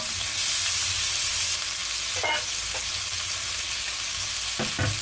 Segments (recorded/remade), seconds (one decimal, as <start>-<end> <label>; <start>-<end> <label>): 0.0-5.0 recorded